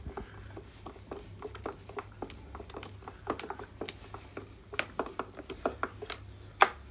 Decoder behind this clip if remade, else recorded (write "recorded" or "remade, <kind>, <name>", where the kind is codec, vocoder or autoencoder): recorded